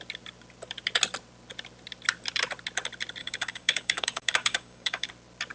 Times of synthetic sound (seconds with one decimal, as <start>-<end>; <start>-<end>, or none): 3.2-5.1